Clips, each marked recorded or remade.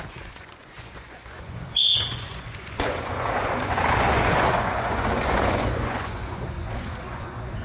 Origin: remade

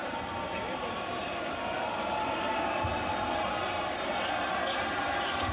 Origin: recorded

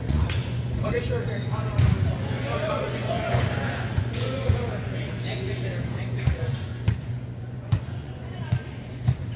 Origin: remade